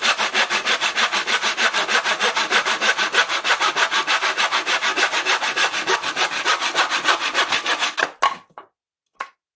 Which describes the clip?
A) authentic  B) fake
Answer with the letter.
A